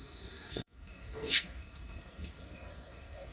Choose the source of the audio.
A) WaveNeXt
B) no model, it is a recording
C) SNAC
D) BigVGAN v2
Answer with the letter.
C